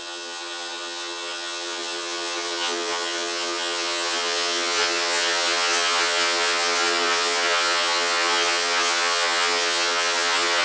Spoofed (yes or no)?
yes